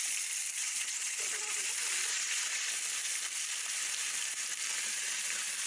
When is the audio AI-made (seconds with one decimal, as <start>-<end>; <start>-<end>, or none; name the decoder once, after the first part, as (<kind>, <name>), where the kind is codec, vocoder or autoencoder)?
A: 0.6-1.7 (vocoder, Vocos); 2.1-2.7